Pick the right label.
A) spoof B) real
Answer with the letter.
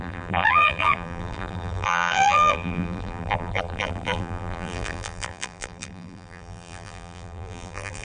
A